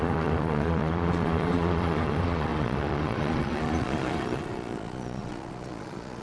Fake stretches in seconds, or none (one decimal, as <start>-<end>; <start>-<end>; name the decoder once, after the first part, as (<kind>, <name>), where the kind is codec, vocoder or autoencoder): 0.0-6.2 (vocoder, Vocos)